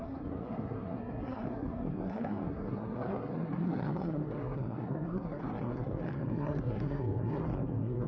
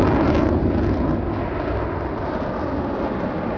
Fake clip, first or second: first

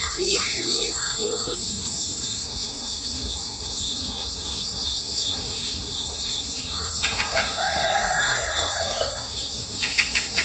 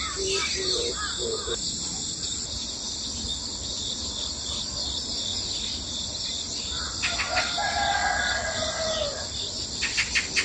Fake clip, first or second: first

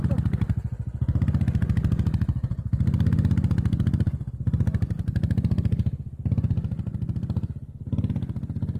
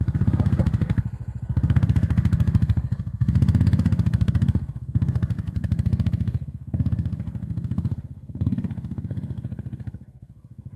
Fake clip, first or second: second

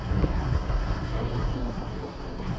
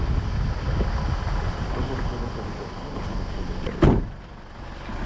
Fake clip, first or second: first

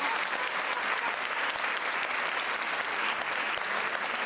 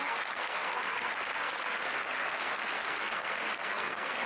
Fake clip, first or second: second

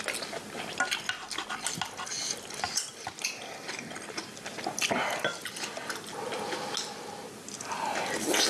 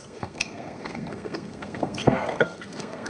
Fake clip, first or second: second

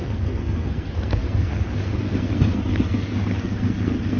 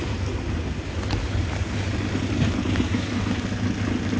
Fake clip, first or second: first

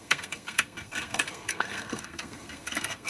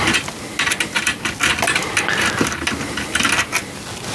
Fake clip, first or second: first